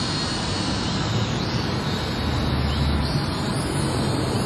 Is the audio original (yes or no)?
yes